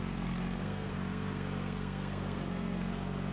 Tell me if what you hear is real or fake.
fake